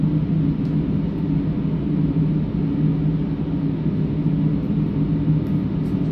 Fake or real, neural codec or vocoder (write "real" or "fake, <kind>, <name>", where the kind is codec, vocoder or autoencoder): real